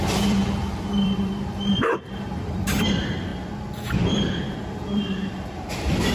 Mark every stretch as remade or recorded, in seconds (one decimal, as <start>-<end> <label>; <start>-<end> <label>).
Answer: 0.0-3.3 remade; 3.3-4.6 recorded; 4.6-6.1 remade